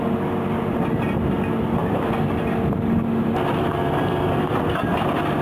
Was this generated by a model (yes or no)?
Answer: no